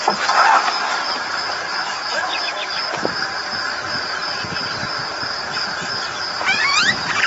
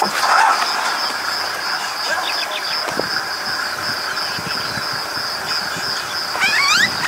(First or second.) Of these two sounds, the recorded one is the second